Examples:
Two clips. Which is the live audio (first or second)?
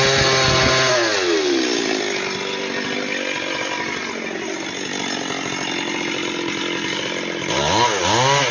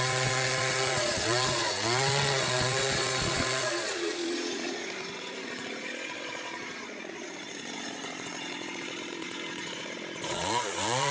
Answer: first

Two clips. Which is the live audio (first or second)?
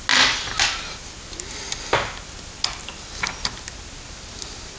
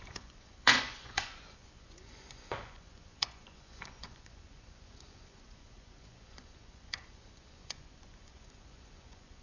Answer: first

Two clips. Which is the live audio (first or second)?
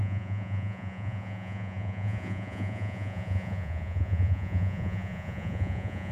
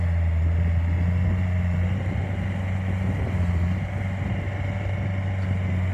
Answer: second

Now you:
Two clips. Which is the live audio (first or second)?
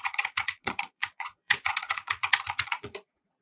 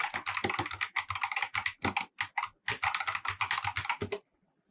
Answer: second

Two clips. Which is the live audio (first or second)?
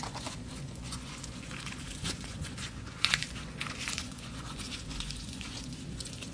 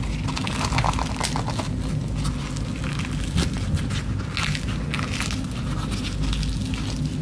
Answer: second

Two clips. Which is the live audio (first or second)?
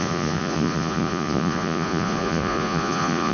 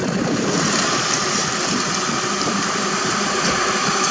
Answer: second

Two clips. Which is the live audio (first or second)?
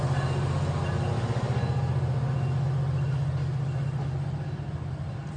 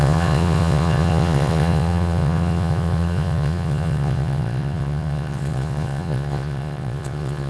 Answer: first